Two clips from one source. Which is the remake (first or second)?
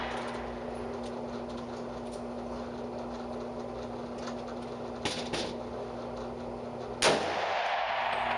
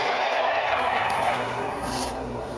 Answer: second